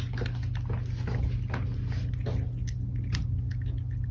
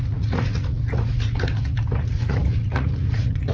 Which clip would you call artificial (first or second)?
second